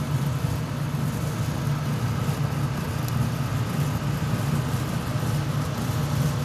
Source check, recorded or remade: recorded